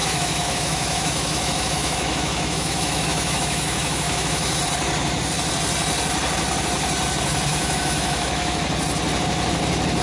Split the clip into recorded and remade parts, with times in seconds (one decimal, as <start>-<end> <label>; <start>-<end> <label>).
0.0-4.6 remade; 4.6-7.5 recorded; 7.5-8.6 remade; 8.6-10.0 recorded